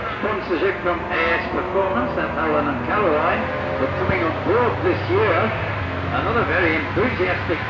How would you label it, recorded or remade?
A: recorded